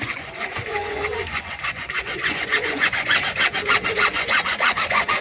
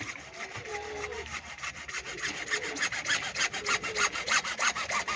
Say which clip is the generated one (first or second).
first